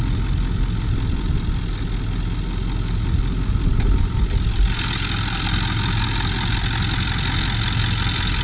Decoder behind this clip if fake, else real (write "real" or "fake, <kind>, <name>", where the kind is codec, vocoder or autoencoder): real